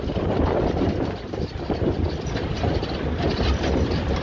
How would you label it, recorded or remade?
remade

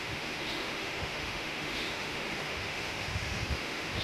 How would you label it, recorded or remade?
remade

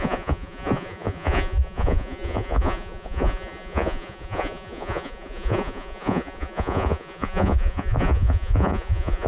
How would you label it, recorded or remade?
remade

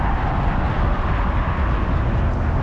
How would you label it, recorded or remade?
recorded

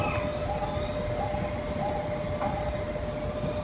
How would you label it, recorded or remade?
recorded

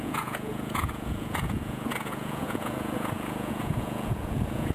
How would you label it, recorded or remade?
remade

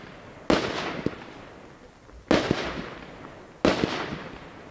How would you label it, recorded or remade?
recorded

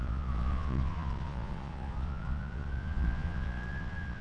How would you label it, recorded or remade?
remade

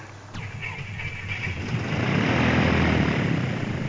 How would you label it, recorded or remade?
recorded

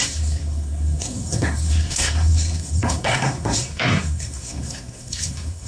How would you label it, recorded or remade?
remade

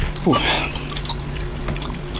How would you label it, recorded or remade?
recorded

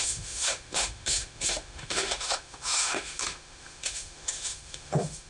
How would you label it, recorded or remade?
remade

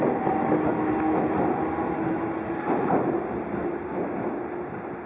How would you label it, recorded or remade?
recorded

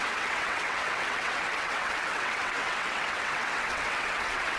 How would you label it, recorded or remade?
remade